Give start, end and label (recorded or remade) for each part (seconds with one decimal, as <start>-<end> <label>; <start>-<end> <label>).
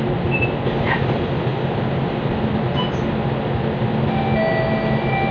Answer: 0.0-5.3 recorded